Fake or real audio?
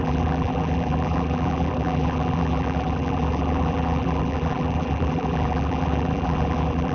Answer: fake